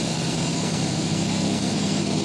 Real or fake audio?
fake